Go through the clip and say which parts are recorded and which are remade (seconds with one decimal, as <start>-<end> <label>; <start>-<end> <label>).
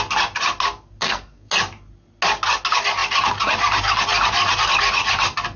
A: 0.0-1.0 recorded; 1.0-1.5 remade; 1.5-5.6 recorded